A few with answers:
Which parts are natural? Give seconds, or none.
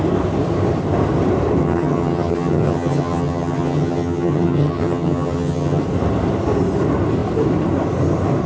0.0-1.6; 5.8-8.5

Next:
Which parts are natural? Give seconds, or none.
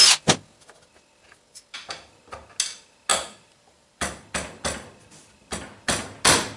0.0-6.6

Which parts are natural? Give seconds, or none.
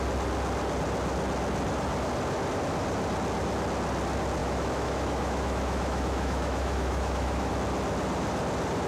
0.0-4.4; 7.5-8.9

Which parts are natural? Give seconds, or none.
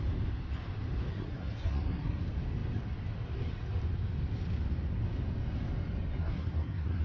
0.0-1.1; 2.2-6.2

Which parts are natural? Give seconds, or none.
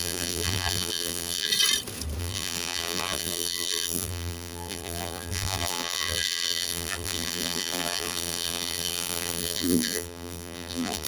1.5-2.2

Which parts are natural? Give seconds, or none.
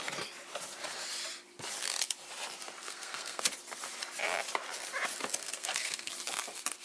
0.0-2.8; 3.5-5.4; 6.1-6.8